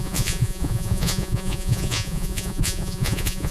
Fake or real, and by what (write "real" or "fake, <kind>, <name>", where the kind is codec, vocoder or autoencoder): fake, vocoder, Vocos